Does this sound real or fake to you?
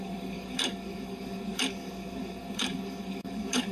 fake